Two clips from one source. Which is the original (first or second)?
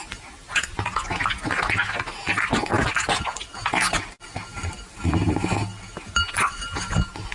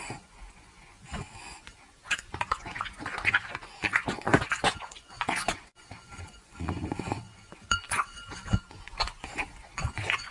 first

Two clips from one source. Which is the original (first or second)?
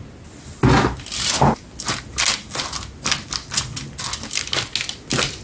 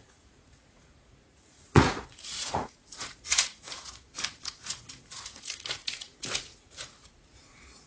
first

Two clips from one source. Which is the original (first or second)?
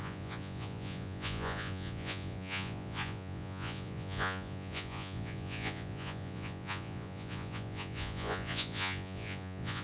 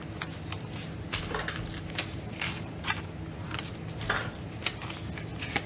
second